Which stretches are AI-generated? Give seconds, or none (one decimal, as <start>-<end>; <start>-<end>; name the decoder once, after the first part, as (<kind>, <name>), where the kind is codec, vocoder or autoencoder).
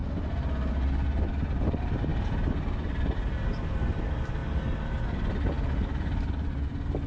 none